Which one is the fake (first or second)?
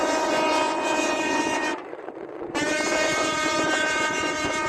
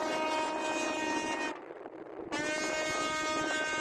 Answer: first